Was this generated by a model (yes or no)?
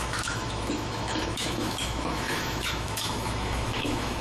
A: yes